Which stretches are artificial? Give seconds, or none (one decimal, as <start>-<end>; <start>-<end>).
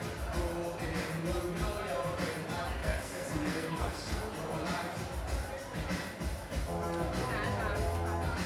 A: 2.8-4.2